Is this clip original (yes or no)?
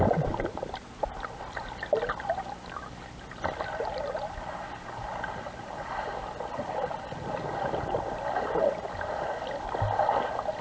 yes